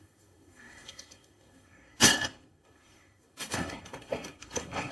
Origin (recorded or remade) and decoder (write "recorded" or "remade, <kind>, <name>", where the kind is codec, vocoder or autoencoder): remade, codec, SNAC